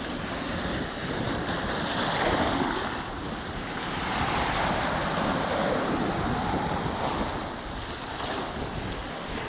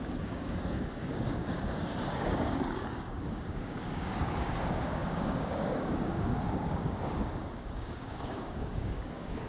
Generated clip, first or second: second